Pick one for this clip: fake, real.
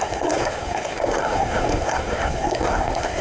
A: fake